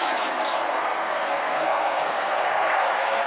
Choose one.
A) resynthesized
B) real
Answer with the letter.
A